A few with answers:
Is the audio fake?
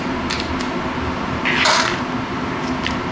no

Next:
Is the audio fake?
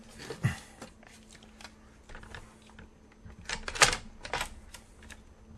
no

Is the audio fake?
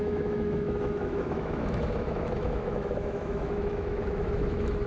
yes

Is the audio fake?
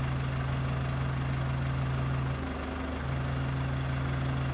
no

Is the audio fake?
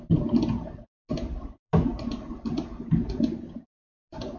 no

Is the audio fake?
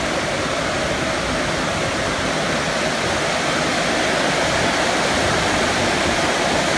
yes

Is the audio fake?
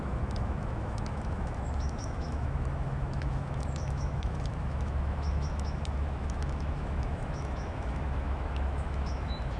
yes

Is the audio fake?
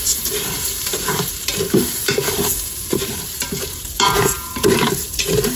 yes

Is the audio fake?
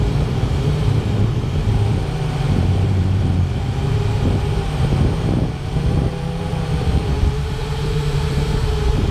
yes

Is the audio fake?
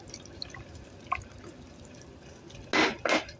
no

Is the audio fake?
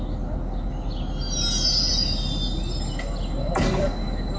no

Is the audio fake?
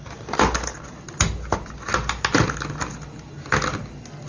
no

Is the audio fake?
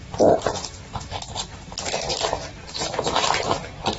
no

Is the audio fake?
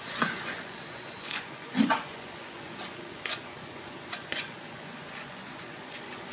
yes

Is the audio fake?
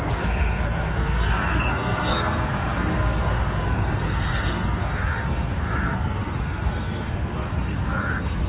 yes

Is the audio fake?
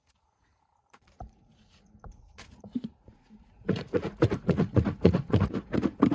yes